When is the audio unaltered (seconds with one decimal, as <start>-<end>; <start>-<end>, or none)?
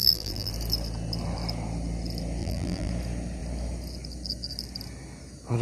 0.5-2.4; 2.9-5.6